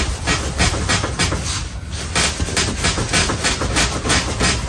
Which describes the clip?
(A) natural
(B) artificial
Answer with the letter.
A